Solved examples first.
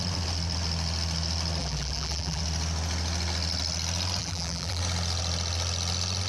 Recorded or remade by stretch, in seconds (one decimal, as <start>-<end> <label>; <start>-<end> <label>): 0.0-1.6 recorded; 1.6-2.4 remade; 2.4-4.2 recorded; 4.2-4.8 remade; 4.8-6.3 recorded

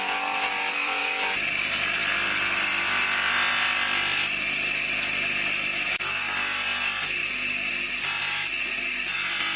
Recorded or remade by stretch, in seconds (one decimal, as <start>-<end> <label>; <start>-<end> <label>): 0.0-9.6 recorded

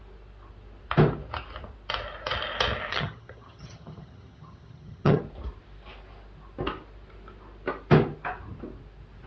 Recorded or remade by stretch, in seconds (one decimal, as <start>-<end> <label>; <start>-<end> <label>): 0.0-2.9 recorded; 2.9-5.2 remade; 5.2-9.3 recorded